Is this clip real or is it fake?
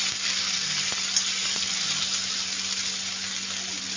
real